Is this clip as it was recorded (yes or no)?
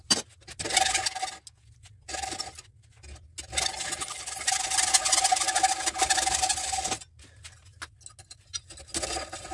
yes